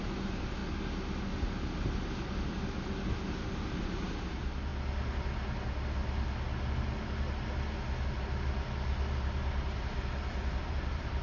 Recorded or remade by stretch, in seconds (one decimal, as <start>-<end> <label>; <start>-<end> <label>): 0.0-0.6 remade; 0.6-3.8 recorded; 3.8-4.7 remade; 4.7-9.2 recorded; 9.2-9.9 remade; 9.9-10.6 recorded; 10.6-11.2 remade